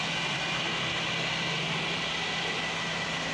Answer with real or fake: real